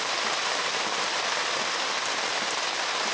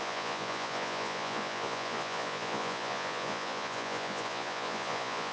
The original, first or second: first